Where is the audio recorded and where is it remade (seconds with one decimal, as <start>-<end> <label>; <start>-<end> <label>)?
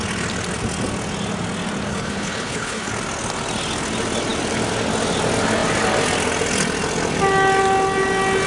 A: 0.0-1.9 recorded; 1.9-2.9 remade; 2.9-8.5 recorded